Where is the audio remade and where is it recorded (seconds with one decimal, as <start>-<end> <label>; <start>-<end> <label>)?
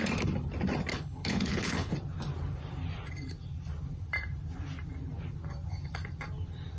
0.0-0.9 recorded; 0.9-1.9 remade; 1.9-6.8 recorded